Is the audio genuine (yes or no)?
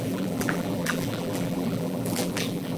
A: no